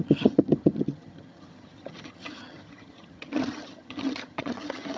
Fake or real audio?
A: fake